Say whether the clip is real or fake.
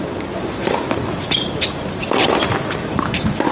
fake